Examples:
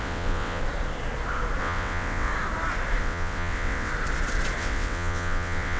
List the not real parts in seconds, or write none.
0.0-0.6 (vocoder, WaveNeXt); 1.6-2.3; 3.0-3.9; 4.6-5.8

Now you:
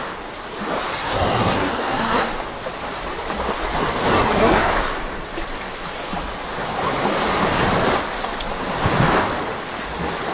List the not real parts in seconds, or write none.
0.9-2.3 (codec, SNAC); 4.1-4.7

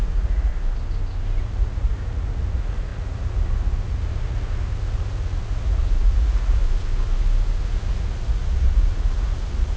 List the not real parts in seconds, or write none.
0.0-0.5 (vocoder, Vocos); 1.4-6.6; 7.6-9.8

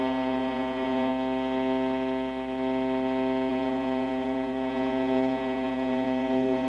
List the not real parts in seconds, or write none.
0.0-1.1 (vocoder, Vocos); 3.5-6.7

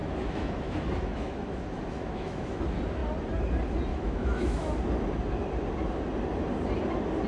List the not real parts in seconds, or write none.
0.0-2.6 (autoencoder, DAC-VAE); 3.9-4.7

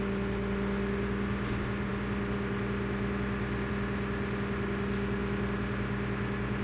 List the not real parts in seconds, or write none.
none

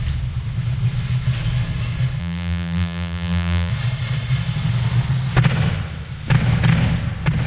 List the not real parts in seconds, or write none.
2.2-3.7 (vocoder, BigVGAN v2)